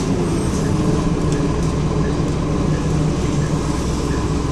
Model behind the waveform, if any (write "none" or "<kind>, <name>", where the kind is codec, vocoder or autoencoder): none